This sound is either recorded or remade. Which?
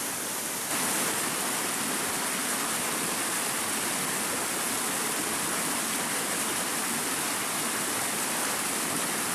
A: recorded